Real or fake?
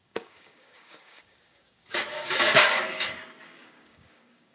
fake